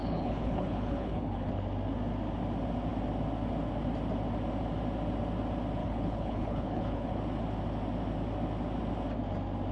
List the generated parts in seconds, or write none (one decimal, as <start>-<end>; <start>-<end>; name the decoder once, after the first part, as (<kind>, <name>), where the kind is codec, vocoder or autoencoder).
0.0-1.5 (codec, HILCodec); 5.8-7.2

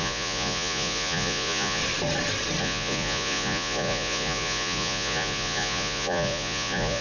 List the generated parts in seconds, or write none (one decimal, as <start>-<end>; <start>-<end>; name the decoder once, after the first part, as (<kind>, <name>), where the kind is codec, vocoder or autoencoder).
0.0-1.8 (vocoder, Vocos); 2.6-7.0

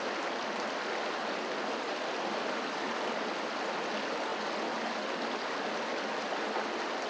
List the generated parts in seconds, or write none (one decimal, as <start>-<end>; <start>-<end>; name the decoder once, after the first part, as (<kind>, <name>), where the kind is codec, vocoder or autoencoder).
none

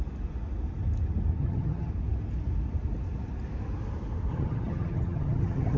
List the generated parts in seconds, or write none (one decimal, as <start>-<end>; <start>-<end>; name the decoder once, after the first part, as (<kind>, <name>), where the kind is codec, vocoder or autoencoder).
1.4-1.9 (vocoder, HiFi-GAN); 4.3-5.8

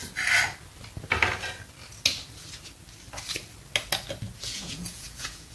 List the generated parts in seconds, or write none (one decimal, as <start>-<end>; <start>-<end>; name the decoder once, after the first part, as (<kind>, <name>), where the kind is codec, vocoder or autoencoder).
4.5-5.5 (vocoder, Vocos)

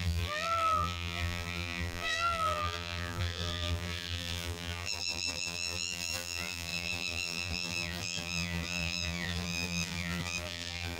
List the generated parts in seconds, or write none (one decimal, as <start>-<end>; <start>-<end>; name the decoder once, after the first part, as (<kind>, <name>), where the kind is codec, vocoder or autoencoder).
0.0-11.0 (vocoder, BigVGAN v2)

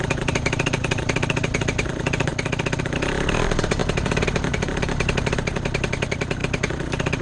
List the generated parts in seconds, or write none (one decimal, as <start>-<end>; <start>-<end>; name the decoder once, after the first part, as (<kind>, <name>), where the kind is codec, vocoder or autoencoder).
0.0-2.3 (vocoder, BigVGAN v2); 2.8-7.2

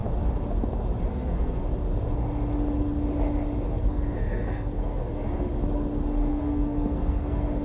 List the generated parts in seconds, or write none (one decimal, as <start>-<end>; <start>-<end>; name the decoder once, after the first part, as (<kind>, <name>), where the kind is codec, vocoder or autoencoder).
1.1-1.6 (codec, SNAC); 3.7-5.5; 6.3-7.6